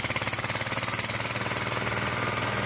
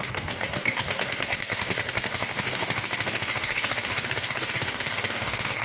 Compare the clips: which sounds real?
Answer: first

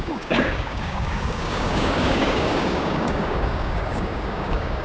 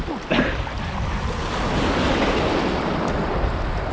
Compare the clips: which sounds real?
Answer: second